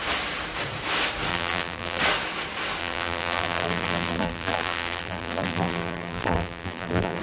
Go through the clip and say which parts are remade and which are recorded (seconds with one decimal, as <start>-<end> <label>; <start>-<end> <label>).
0.0-1.3 recorded; 1.3-2.0 remade; 2.0-2.8 recorded; 2.8-7.2 remade